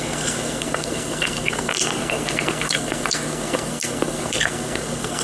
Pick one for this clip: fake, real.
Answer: fake